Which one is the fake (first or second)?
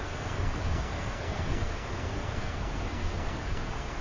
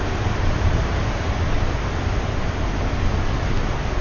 first